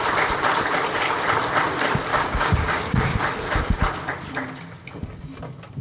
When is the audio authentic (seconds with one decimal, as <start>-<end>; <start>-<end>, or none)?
0.0-2.1; 3.2-5.8

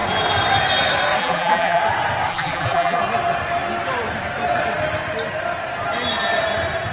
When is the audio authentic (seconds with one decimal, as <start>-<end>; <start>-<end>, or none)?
0.0-1.2; 1.8-2.3; 3.0-6.9

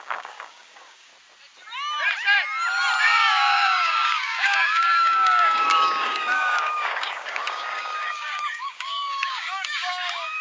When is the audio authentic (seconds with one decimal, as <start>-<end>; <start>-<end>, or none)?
1.1-3.0